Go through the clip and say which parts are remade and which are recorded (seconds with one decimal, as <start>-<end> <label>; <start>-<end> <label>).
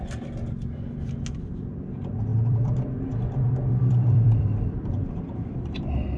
0.0-2.3 recorded; 2.3-6.2 remade